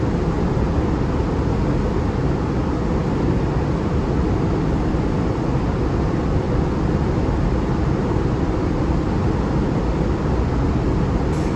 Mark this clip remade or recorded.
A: recorded